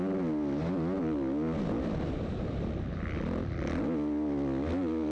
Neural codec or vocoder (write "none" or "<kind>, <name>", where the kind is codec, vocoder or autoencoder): none